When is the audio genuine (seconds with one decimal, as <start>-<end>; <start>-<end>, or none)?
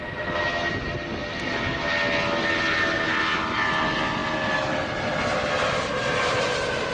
0.0-6.9